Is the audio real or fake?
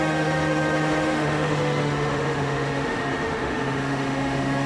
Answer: fake